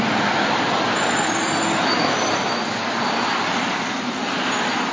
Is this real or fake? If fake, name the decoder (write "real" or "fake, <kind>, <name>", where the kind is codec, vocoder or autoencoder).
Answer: real